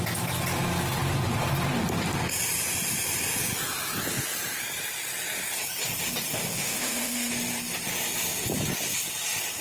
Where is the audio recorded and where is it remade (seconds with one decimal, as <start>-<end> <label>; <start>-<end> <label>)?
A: 0.0-6.4 recorded; 6.4-7.3 remade; 7.3-9.6 recorded